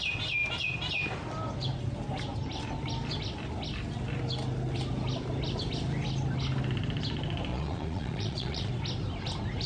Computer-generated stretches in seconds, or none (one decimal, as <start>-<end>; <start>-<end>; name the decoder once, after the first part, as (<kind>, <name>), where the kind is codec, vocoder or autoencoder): 7.5-8.7 (vocoder, Vocos)